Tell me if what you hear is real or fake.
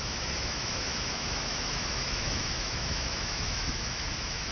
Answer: fake